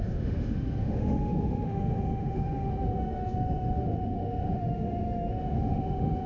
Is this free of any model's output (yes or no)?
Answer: no